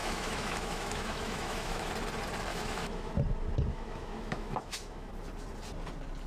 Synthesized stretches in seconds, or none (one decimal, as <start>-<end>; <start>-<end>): 0.0-1.9; 2.5-3.1; 3.7-5.1